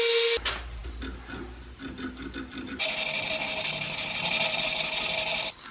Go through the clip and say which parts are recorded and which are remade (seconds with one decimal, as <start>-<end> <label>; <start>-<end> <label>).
0.0-5.7 recorded